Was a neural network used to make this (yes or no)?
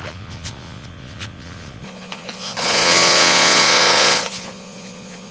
yes